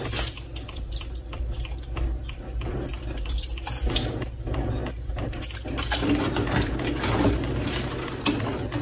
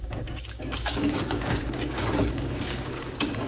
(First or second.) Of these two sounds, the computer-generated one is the second